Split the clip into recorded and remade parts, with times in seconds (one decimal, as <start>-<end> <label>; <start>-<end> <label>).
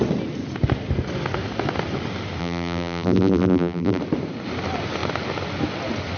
0.0-2.4 recorded; 2.4-4.0 remade; 4.0-6.2 recorded